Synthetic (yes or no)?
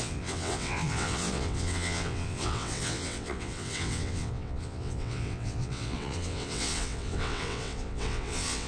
yes